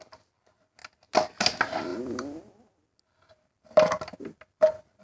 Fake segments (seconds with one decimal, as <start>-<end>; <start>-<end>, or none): none